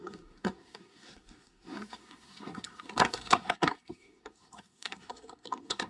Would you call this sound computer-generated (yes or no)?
yes